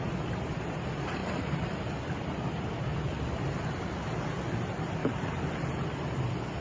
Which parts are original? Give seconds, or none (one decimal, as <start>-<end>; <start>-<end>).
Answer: 0.0-1.2; 1.8-5.0; 5.5-6.6